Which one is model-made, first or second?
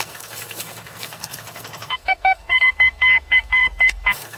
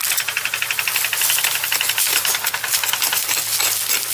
first